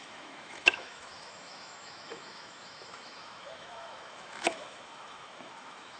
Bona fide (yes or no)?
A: no